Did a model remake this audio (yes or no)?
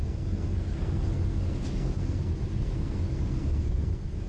yes